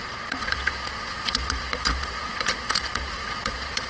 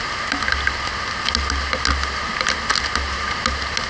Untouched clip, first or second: second